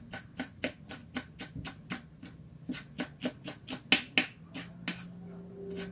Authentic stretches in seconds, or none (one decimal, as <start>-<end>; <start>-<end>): 0.0-5.9